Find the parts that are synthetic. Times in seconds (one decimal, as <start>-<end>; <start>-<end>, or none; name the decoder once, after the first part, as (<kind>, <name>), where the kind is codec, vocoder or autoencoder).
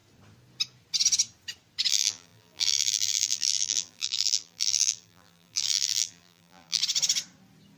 1.9-6.8 (vocoder, BigVGAN v2)